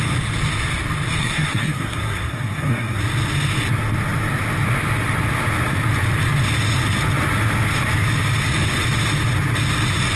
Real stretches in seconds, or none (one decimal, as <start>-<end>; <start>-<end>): 0.0-1.2; 3.0-10.2